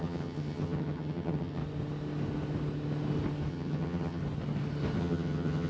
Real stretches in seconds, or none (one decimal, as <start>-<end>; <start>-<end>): 1.6-3.5; 4.2-5.0